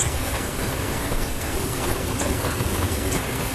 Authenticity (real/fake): fake